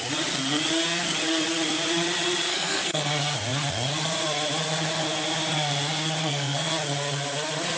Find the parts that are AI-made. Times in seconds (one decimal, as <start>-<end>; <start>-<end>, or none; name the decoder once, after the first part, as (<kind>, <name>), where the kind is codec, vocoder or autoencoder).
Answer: 2.5-3.1 (codec, SNAC); 6.2-6.7